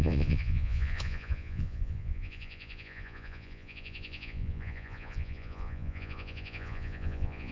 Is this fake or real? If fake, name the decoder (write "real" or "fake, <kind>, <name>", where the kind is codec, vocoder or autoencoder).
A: fake, vocoder, Vocos